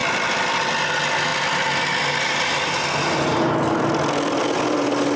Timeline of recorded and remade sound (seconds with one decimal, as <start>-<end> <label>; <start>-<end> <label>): 0.0-0.9 remade; 0.9-5.2 recorded

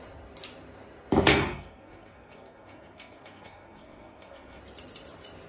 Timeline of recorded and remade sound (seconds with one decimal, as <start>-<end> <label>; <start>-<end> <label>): 0.0-1.3 recorded; 1.3-4.6 remade; 4.6-5.5 recorded

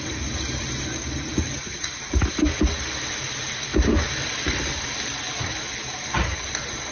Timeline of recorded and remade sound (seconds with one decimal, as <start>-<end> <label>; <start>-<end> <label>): 0.0-6.9 recorded

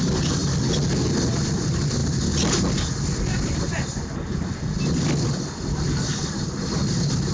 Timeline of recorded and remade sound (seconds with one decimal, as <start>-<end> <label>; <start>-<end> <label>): 0.0-7.3 recorded